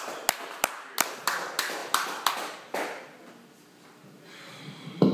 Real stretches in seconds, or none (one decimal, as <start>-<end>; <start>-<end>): 0.0-5.1